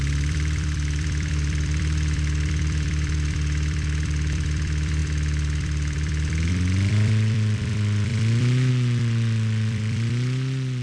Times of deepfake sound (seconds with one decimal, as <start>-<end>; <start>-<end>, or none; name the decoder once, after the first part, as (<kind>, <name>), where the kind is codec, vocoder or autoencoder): 0.0-10.8 (vocoder, BigVGAN v2)